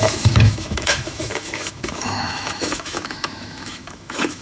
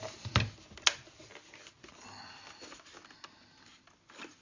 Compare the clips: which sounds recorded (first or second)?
second